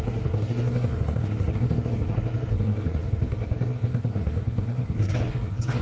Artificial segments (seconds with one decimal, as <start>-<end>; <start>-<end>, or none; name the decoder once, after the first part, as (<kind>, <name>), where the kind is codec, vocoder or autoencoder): 0.0-5.8 (codec, SNAC)